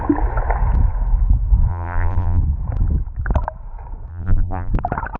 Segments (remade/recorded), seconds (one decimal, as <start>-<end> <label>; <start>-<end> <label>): 0.0-1.7 recorded; 1.7-2.4 remade; 2.4-4.1 recorded; 4.1-4.7 remade; 4.7-5.2 recorded